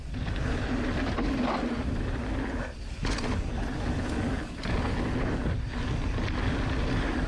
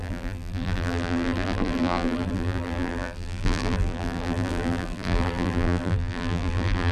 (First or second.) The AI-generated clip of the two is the second